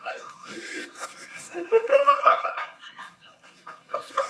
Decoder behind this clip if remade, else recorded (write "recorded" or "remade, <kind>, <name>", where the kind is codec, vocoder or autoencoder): remade, codec, SNAC